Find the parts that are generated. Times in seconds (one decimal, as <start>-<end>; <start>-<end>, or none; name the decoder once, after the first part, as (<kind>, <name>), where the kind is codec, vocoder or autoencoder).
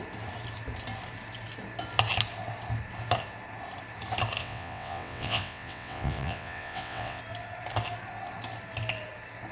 4.4-7.2 (vocoder, WaveNeXt)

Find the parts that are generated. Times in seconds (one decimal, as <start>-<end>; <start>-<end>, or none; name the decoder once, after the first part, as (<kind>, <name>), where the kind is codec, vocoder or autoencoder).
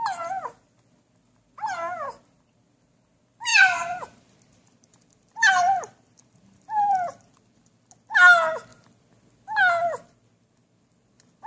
3.5-7.9 (vocoder, BigVGAN v2)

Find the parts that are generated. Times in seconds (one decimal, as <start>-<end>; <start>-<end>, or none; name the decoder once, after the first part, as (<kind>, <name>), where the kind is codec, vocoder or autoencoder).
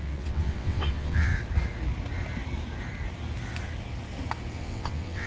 0.0-1.3 (vocoder, WaveNeXt); 4.5-5.3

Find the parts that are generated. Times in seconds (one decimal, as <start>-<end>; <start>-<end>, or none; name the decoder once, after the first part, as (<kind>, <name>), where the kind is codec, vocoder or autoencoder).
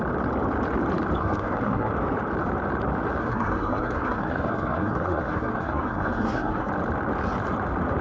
1.2-1.9 (codec, SNAC); 3.2-6.7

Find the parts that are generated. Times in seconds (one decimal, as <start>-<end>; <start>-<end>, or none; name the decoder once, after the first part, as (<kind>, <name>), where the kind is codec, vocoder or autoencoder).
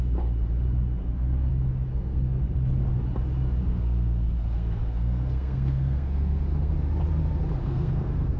1.0-1.5 (codec, SNAC); 1.9-2.4; 3.6-6.7; 7.6-8.4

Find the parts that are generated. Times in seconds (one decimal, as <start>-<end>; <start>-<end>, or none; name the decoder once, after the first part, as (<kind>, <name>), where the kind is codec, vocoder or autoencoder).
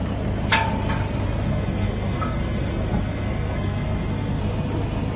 1.5-4.4 (codec, SNAC)